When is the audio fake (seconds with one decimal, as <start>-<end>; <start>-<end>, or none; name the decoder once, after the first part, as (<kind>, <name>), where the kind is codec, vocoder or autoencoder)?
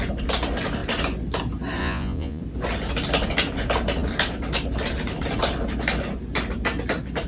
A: 1.8-2.4 (vocoder, Vocos)